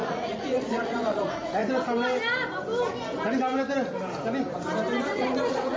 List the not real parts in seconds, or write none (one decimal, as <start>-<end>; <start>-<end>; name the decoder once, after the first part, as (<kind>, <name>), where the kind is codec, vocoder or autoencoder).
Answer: 0.0-1.6 (vocoder, Vocos); 5.1-5.8